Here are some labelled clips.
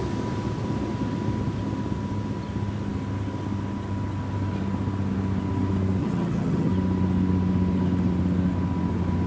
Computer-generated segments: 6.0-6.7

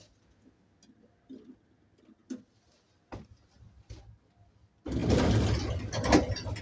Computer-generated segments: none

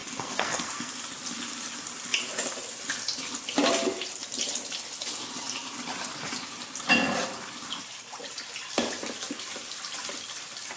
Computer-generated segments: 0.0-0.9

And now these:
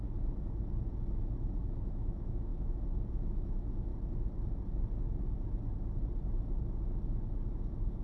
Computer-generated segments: 1.6-2.5; 3.1-3.9; 7.5-8.0